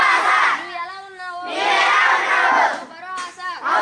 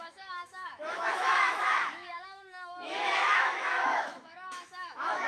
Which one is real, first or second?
first